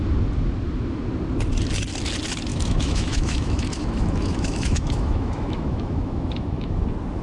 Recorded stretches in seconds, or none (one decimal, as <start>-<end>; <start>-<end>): 0.0-2.5; 6.8-7.2